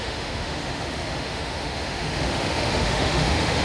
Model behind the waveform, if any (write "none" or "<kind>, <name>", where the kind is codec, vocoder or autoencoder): autoencoder, DAC-VAE